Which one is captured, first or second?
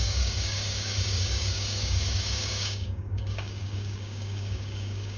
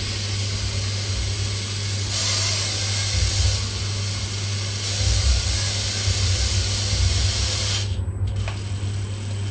second